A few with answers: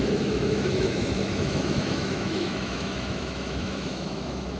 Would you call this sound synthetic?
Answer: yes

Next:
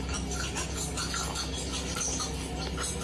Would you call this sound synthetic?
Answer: no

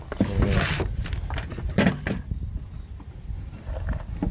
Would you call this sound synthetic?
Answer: no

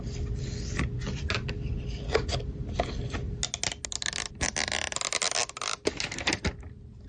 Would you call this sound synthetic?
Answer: no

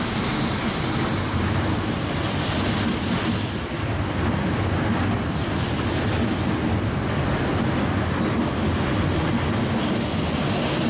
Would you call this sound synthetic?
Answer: no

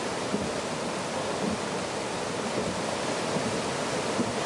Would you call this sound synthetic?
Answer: no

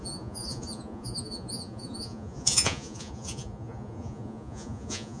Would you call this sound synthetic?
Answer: yes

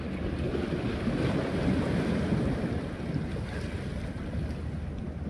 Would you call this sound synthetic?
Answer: no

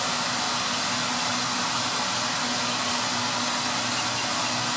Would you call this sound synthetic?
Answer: no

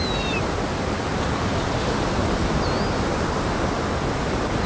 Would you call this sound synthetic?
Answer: no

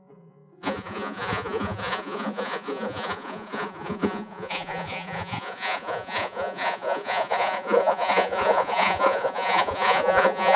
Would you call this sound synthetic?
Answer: yes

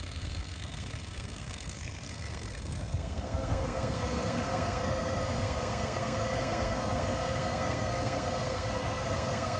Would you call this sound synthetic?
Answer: yes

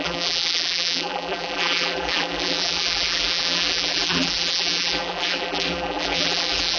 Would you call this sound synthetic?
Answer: yes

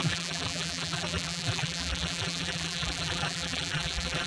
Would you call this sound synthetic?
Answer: yes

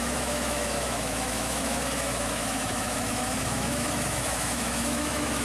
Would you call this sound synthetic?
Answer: yes